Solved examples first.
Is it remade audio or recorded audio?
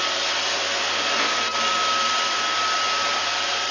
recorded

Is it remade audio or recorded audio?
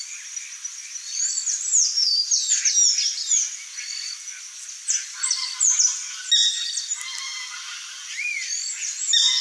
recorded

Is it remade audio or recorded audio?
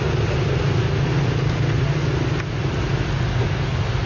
recorded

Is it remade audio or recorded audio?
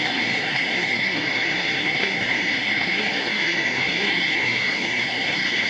remade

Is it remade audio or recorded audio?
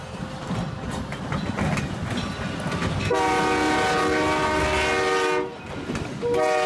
recorded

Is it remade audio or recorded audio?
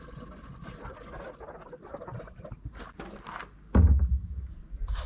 recorded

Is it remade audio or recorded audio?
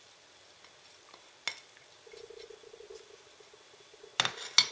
recorded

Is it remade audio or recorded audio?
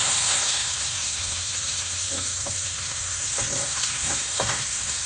remade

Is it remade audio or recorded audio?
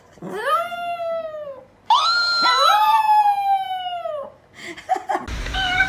recorded